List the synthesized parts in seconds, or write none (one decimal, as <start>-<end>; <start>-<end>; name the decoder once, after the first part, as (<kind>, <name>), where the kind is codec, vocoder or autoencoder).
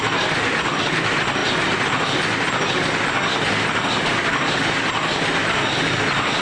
none